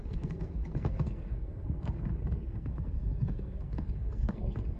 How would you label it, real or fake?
fake